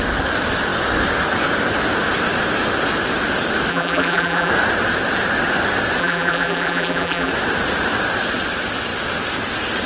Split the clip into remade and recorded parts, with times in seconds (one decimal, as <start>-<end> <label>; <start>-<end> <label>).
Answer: 0.0-3.7 recorded; 3.7-4.5 remade; 4.5-6.0 recorded; 6.0-7.3 remade; 7.3-9.9 recorded